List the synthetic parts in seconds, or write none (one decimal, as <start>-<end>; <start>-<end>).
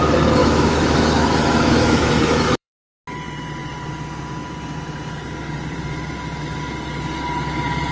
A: 0.4-2.8